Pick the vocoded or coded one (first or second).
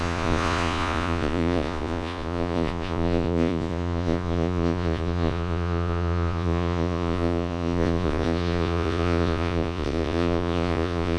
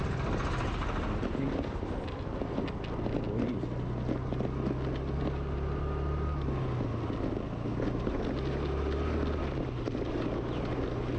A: first